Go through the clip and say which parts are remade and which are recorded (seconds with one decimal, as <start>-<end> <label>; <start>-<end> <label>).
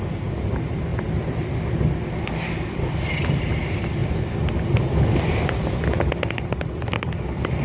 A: 0.0-7.6 recorded